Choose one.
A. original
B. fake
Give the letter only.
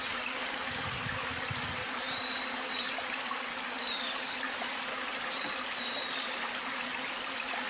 A